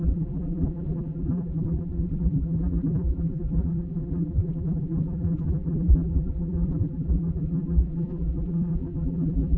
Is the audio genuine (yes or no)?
no